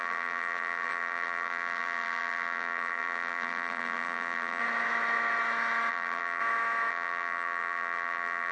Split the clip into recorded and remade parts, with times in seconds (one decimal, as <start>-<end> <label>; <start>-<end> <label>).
0.0-4.6 remade; 4.6-5.9 recorded; 5.9-6.4 remade; 6.4-6.9 recorded; 6.9-8.5 remade